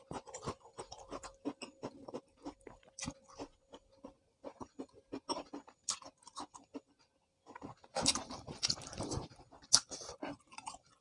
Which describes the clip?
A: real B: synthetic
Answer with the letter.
A